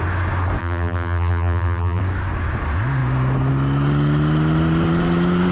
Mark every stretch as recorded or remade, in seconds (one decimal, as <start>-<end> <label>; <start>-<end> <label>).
0.0-0.6 recorded; 0.6-2.0 remade; 2.0-5.5 recorded